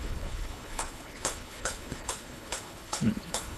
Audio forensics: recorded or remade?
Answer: remade